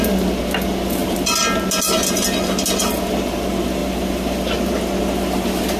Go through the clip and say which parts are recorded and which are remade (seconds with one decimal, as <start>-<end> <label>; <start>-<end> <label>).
0.0-5.8 recorded